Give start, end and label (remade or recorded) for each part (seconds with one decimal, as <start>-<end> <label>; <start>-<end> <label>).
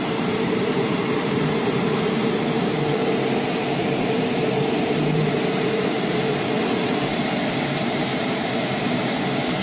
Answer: 0.0-3.0 remade; 3.0-3.9 recorded; 3.9-9.6 remade